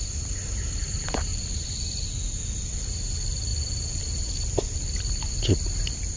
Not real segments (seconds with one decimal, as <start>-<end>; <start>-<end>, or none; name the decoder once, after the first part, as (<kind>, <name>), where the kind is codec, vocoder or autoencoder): none